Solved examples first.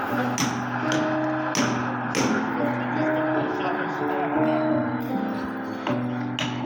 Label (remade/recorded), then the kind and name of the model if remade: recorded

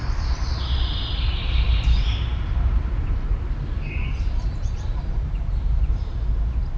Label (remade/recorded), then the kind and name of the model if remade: remade, vocoder, BigVGAN v2